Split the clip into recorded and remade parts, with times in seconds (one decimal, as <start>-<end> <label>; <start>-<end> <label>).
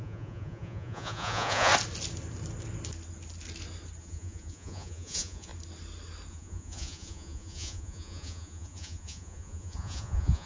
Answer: 0.0-1.7 remade; 1.7-4.0 recorded; 4.0-5.5 remade; 5.5-6.3 recorded; 6.3-10.5 remade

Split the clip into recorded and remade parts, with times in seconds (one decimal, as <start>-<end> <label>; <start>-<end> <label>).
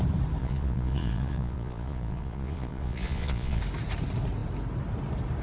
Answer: 0.0-0.4 recorded; 0.4-3.6 remade; 3.6-5.4 recorded